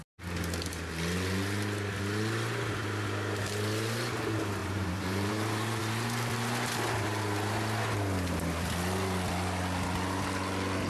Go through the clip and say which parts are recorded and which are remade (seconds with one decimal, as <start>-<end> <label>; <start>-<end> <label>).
0.0-4.6 recorded; 4.6-5.8 remade; 5.8-10.9 recorded